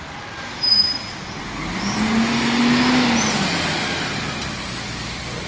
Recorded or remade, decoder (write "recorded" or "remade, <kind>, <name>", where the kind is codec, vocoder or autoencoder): recorded